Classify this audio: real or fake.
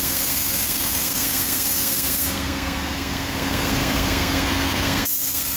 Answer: fake